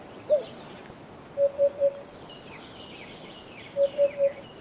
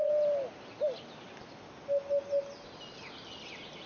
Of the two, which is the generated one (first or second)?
first